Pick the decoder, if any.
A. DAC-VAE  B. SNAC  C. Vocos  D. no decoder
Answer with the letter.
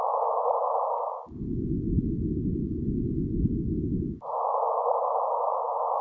D